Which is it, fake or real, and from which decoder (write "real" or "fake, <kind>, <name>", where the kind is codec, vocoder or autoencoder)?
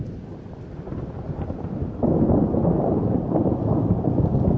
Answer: fake, vocoder, BigVGAN v2